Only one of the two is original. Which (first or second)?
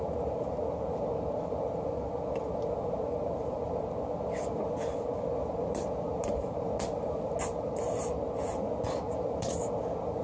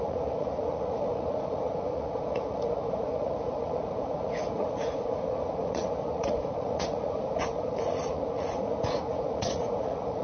first